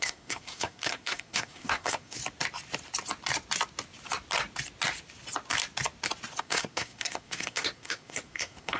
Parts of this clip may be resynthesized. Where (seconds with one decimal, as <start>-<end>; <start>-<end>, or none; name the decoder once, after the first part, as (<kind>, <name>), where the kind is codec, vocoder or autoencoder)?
0.0-2.2 (codec, SNAC); 6.4-8.8